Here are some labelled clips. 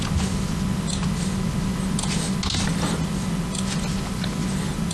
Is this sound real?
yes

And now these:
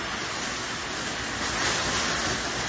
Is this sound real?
yes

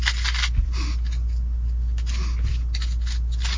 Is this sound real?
yes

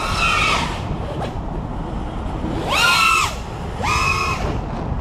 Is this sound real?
yes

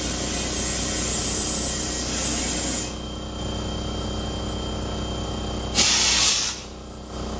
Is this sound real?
yes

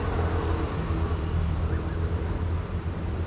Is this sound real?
yes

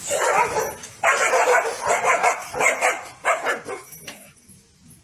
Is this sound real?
yes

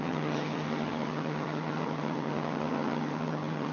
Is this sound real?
no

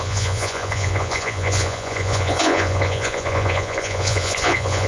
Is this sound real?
no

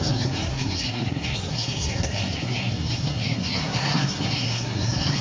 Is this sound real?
no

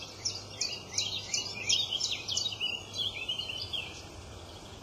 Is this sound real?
no